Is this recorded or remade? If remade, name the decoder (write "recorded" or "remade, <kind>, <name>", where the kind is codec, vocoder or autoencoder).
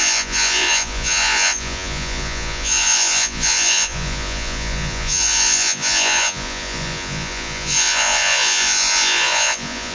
remade, vocoder, Vocos